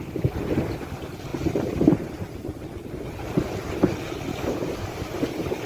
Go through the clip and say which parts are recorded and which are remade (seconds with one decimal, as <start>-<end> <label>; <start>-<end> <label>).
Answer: 0.0-4.3 recorded; 4.3-5.1 remade; 5.1-5.7 recorded